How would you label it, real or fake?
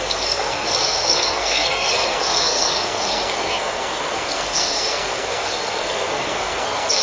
fake